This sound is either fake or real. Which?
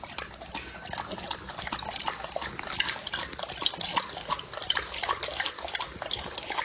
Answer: real